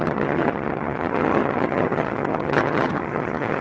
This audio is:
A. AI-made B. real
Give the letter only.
A